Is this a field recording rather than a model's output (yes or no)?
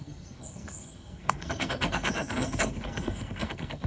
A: no